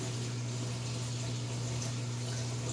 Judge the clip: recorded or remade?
recorded